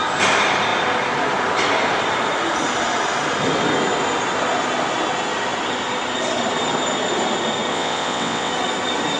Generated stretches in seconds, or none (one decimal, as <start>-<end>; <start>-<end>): 7.7-8.5